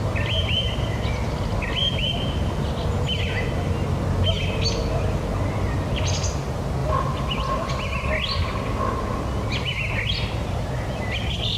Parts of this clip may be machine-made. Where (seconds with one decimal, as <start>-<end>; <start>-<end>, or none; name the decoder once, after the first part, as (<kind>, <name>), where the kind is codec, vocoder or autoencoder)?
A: 6.8-7.7 (vocoder, BigVGAN v2)